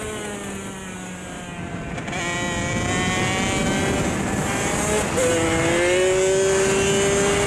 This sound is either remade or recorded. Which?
recorded